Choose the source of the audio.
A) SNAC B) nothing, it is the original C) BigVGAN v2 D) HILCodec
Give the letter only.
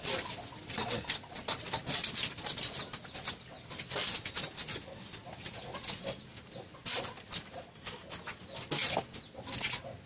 B